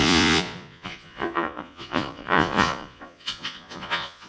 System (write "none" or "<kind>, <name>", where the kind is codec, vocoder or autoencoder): vocoder, Vocos